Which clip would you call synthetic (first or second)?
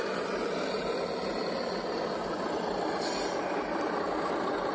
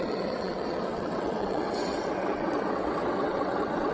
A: second